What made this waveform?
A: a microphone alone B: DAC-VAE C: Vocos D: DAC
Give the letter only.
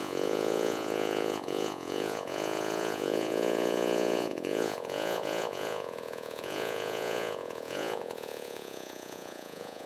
C